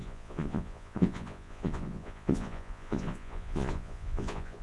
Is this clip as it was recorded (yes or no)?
no